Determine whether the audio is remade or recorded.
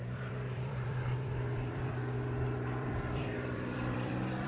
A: remade